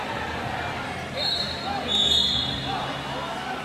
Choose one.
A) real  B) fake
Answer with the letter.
A